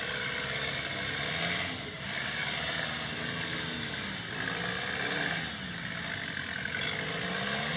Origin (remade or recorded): recorded